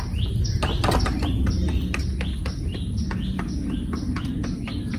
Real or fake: real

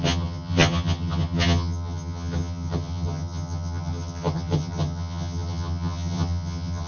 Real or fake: fake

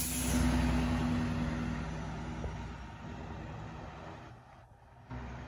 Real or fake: real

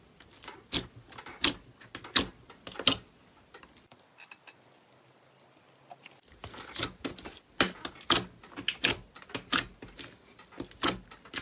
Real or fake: real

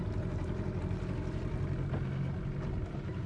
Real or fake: real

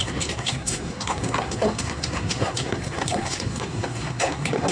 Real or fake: fake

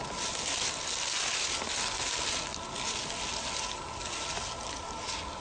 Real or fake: real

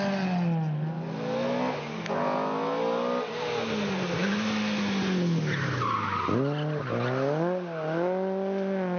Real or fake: real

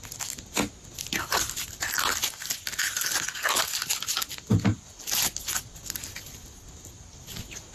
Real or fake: real